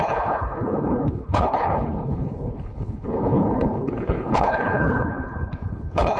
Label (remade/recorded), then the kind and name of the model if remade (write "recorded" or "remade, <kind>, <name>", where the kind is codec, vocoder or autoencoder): remade, codec, HILCodec